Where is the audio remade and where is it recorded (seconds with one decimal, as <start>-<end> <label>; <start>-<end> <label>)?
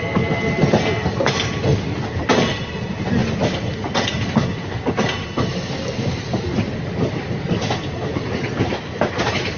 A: 0.0-9.6 recorded